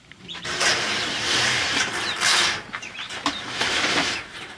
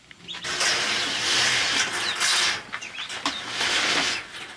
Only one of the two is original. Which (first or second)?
second